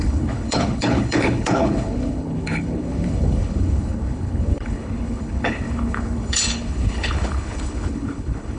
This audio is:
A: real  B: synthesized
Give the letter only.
B